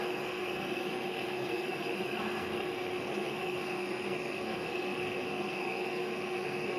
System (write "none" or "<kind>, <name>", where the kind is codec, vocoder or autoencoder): codec, SNAC